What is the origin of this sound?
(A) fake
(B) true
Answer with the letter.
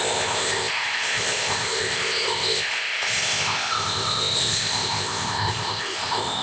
A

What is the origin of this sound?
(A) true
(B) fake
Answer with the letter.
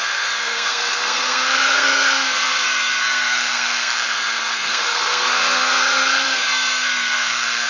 B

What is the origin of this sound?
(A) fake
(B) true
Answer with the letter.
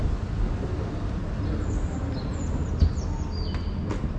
B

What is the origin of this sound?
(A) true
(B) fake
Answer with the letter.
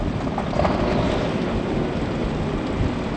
A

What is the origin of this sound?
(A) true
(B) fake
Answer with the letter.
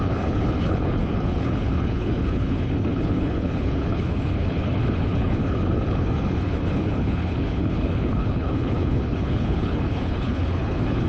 B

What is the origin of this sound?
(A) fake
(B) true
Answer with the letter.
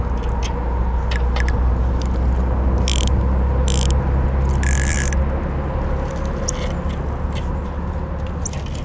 B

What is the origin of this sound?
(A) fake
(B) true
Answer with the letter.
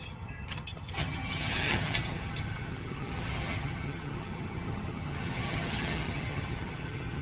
A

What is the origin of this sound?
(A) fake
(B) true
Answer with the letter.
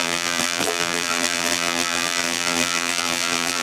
A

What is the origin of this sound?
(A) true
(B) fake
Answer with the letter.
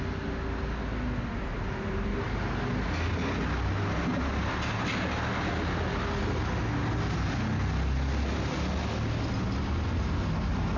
A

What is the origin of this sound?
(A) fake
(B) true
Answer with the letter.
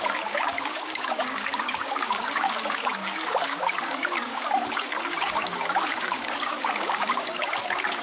A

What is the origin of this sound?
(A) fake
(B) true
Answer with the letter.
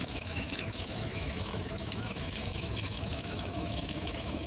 A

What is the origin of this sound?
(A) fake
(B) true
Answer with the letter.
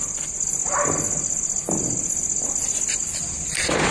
B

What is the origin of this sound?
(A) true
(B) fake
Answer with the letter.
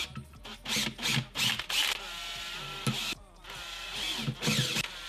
A